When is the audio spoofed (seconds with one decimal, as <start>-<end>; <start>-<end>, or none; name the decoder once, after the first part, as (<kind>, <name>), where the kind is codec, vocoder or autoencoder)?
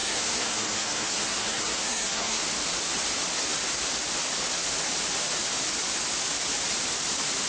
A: 0.0-2.4 (codec, SNAC)